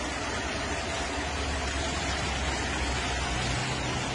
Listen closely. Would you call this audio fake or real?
real